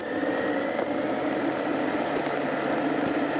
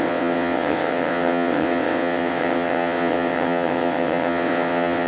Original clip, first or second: first